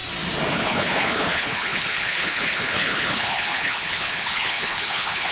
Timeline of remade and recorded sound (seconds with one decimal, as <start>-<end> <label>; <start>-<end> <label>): 0.0-0.5 recorded; 0.5-5.3 remade

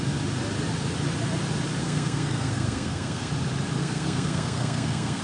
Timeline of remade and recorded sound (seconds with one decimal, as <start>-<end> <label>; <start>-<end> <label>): 0.0-1.8 recorded; 1.8-3.3 remade; 3.3-3.8 recorded; 3.8-5.2 remade

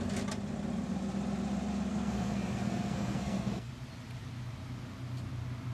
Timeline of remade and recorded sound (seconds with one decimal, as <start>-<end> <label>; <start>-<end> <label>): 0.0-1.9 recorded; 1.9-3.7 remade; 3.7-5.7 recorded

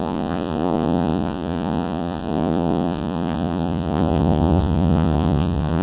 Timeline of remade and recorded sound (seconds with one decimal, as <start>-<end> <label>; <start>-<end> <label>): 0.0-5.8 remade

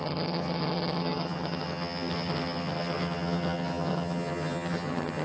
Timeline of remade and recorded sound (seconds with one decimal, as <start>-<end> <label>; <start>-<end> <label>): 0.0-5.2 remade